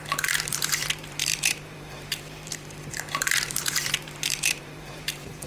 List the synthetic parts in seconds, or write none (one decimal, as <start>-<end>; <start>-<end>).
0.5-5.5